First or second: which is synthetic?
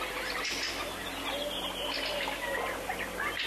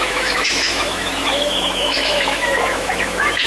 second